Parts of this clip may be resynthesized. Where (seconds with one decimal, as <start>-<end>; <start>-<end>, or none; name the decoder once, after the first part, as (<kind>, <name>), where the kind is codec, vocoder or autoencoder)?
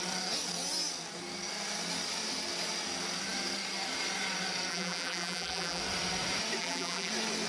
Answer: 4.7-5.8 (vocoder, BigVGAN v2); 6.6-7.1